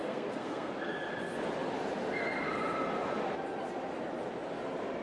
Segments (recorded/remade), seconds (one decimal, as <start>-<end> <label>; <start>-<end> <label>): 0.0-0.7 remade; 0.7-5.0 recorded